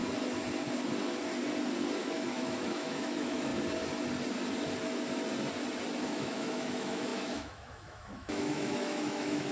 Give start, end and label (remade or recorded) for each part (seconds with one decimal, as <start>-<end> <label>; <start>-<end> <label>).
0.0-2.0 recorded; 2.0-3.5 remade; 3.5-6.0 recorded; 6.0-9.5 remade